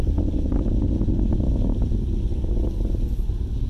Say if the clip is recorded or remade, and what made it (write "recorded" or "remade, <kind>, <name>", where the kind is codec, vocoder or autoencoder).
recorded